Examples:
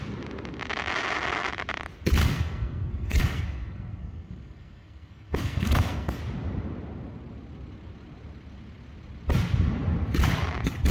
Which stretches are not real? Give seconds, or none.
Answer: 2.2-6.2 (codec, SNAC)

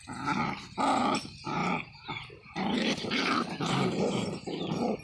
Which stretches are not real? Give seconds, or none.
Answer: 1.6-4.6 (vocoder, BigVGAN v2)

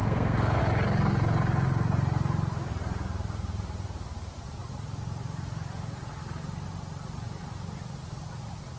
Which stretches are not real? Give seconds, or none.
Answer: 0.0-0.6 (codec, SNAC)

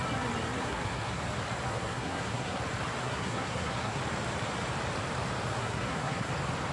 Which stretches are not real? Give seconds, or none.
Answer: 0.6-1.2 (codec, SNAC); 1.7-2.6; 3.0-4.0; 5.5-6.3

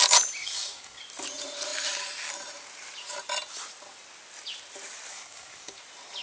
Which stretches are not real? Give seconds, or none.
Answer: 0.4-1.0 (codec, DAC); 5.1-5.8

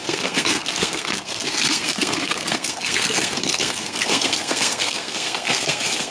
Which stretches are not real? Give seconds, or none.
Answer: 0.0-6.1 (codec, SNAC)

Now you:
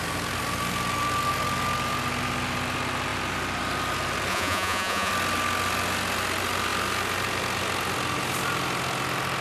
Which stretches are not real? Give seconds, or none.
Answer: 4.3-5.1 (vocoder, Vocos)